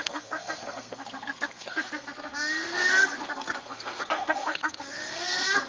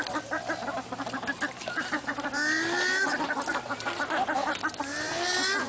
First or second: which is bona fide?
second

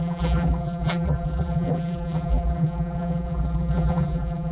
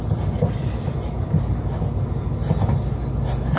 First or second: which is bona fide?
second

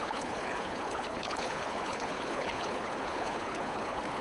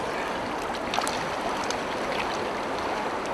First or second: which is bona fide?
second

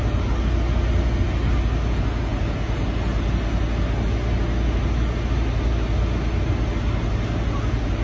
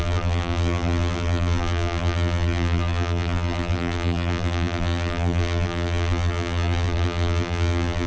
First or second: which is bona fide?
first